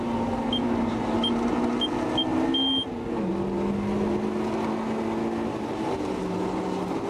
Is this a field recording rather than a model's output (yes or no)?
yes